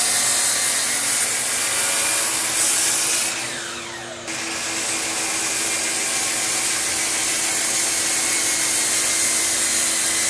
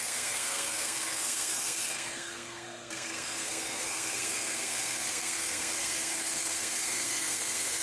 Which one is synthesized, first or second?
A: second